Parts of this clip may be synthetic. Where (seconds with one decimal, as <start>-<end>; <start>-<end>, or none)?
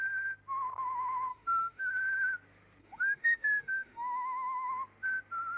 1.3-1.9; 2.8-4.7